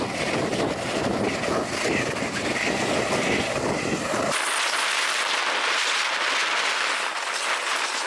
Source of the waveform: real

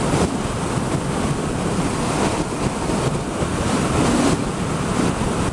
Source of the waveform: real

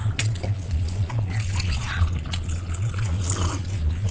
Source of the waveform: fake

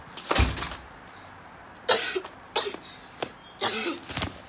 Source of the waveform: real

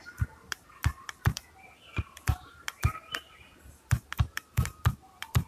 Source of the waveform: fake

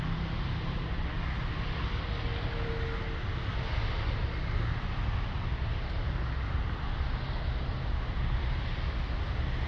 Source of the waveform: real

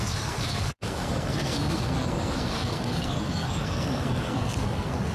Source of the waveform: fake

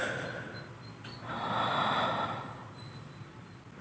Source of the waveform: real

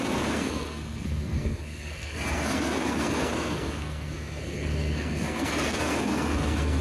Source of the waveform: fake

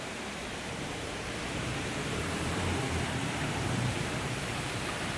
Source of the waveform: fake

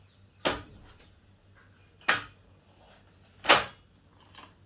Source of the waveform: real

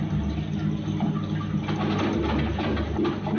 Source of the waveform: real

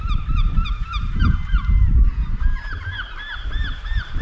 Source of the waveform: fake